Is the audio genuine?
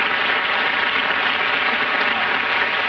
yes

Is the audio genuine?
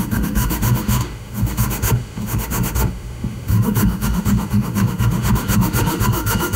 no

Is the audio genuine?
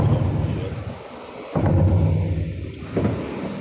yes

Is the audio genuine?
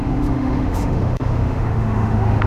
no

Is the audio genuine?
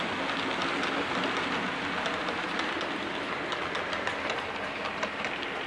yes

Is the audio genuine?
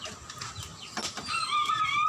yes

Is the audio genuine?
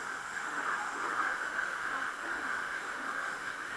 no